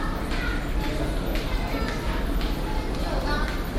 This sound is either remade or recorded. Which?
recorded